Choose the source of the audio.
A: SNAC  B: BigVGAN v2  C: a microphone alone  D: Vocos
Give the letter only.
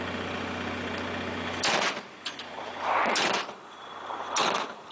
C